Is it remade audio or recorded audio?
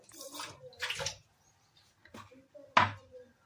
recorded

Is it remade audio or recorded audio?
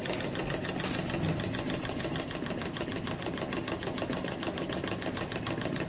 recorded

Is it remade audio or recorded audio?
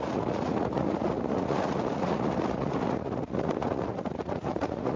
remade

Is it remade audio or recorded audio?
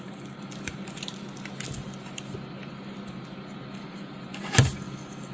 recorded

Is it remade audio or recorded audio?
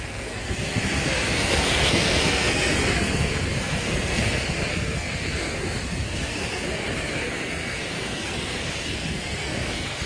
remade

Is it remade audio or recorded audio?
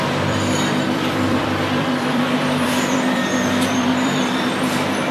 remade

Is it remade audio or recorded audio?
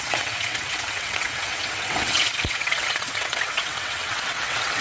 remade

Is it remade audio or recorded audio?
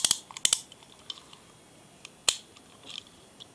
recorded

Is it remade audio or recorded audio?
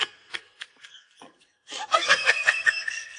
remade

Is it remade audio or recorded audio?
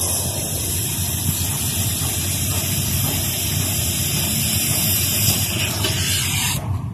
remade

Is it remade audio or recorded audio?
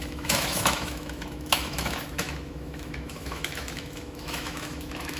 remade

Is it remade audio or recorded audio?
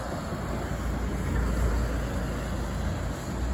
recorded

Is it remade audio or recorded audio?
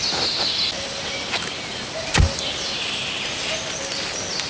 recorded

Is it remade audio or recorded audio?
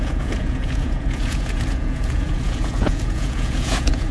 remade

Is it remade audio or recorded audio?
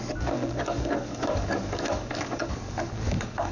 remade